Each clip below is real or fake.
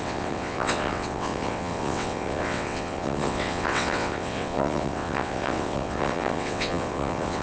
fake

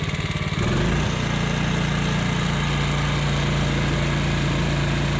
real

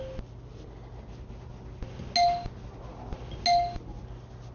real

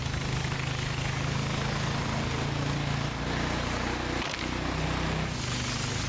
real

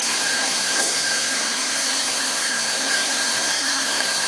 fake